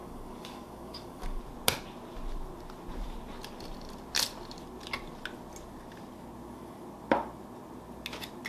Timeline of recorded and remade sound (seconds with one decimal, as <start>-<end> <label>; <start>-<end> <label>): 0.0-1.4 remade; 1.4-8.5 recorded